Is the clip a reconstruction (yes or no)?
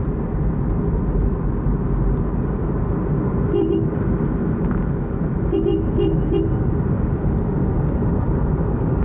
no